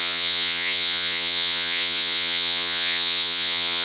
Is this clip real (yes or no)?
no